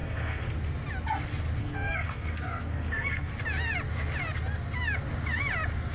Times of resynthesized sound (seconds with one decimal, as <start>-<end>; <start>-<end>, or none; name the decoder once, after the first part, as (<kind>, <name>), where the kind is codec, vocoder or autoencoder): 0.0-0.5 (codec, SNAC); 1.6-3.3